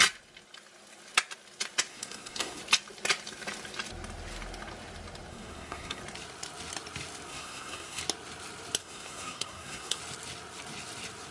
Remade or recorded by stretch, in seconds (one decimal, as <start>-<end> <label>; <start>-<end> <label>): 0.0-1.9 recorded; 1.9-2.6 remade; 2.6-5.3 recorded; 5.3-6.0 remade; 6.0-7.3 recorded; 7.3-8.0 remade; 8.0-8.8 recorded; 8.8-10.0 remade; 10.0-11.3 recorded